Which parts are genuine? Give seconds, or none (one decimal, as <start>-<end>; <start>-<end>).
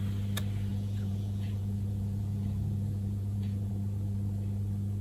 0.0-0.7; 3.7-5.0